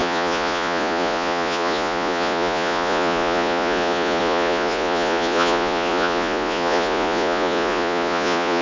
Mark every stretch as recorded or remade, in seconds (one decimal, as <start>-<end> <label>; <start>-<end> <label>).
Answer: 0.0-8.6 remade